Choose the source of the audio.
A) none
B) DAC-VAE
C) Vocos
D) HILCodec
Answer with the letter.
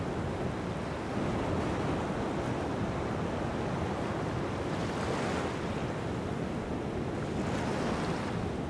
A